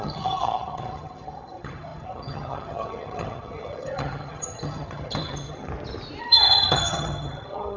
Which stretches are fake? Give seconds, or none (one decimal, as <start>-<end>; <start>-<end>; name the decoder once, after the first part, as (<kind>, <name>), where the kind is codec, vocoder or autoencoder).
0.0-5.7 (vocoder, HiFi-GAN); 6.2-7.8